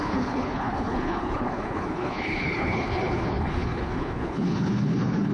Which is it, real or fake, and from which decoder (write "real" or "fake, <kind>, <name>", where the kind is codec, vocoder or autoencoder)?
fake, codec, HILCodec